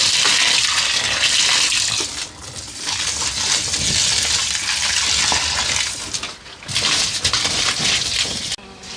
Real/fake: real